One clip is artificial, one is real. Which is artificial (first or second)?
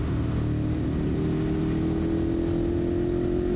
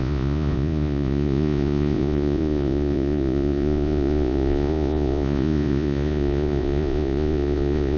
second